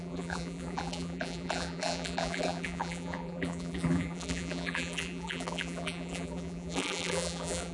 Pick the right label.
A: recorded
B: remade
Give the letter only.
B